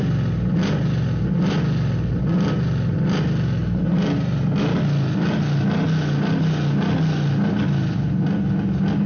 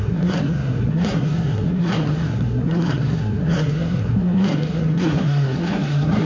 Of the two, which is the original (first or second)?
first